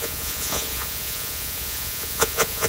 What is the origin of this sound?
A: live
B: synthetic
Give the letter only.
B